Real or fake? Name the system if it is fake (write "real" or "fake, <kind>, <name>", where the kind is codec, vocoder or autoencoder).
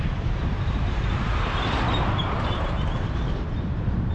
fake, vocoder, BigVGAN v2